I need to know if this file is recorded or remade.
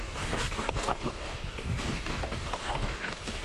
remade